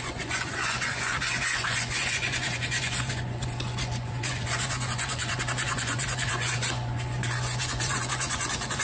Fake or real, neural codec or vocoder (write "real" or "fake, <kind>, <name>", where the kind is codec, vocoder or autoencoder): fake, vocoder, Vocos